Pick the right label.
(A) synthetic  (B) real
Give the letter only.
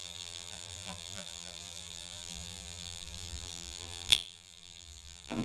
A